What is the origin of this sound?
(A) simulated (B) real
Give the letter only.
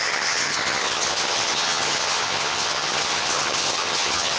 A